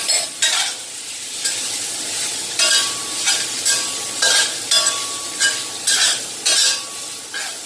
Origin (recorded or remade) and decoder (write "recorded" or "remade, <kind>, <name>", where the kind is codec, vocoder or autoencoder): recorded